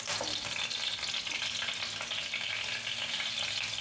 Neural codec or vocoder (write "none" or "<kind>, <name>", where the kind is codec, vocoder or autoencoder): none